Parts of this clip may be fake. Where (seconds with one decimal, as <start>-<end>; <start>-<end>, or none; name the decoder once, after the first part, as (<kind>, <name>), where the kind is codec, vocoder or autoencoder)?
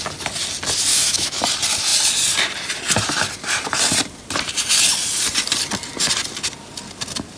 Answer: 0.9-1.4 (autoencoder, DAC-VAE)